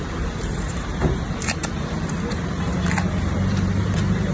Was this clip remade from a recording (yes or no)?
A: yes